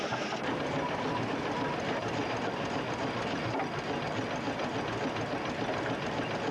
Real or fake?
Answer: real